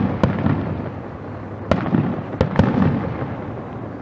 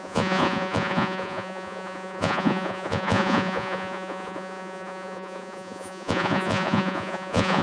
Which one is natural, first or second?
first